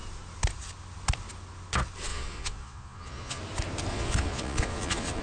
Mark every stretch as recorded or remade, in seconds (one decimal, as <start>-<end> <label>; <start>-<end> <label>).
0.0-2.1 recorded; 2.1-3.4 remade; 3.4-3.9 recorded; 3.9-5.2 remade